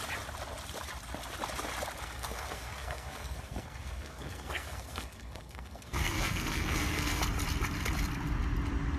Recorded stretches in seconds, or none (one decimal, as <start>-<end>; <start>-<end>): 0.0-2.0; 7.2-9.0